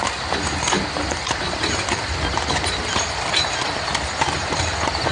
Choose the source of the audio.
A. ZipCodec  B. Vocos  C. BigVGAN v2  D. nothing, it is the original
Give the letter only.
D